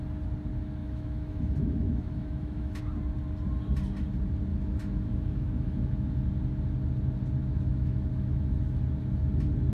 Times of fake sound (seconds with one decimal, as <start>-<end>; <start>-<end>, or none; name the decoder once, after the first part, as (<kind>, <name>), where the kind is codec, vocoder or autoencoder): 0.8-2.8 (autoencoder, DAC-VAE); 4.5-6.3; 7.4-8.6